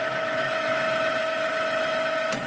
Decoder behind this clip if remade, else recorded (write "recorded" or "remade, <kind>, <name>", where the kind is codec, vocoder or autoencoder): remade, autoencoder, DAC-VAE